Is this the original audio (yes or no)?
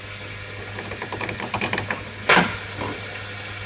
yes